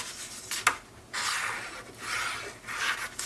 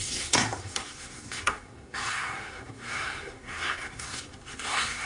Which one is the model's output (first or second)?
second